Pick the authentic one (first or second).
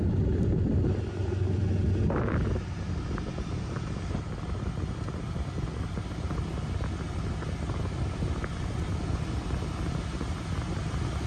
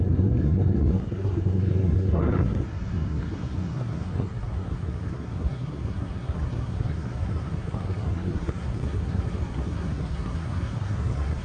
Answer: first